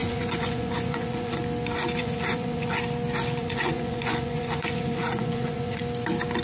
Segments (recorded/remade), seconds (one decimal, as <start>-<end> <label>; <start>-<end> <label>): 0.0-1.4 remade; 1.4-2.0 recorded; 2.0-2.8 remade; 2.8-3.4 recorded; 3.4-5.8 remade; 5.8-6.4 recorded